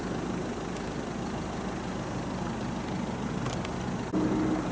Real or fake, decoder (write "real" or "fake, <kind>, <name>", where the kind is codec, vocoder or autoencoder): real